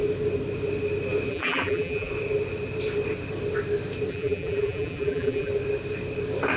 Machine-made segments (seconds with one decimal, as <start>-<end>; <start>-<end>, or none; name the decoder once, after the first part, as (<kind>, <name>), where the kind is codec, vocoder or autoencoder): 1.3-2.1 (vocoder, BigVGAN v2); 4.1-5.5